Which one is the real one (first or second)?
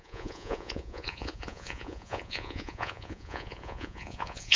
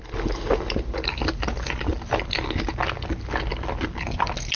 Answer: second